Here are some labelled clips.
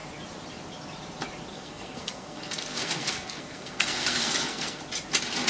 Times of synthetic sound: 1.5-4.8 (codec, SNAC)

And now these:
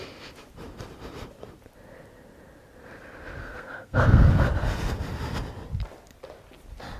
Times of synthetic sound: 3.4-4.3 (codec, SNAC)

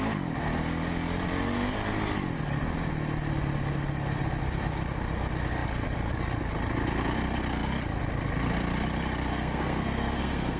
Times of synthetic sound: 9.3-10.6 (codec, SNAC)